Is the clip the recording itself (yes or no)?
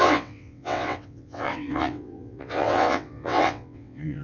no